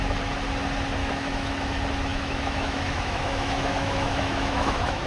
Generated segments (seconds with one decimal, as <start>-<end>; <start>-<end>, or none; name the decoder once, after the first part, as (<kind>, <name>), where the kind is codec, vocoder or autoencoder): 1.0-1.5 (autoencoder, DAC-VAE); 2.1-5.1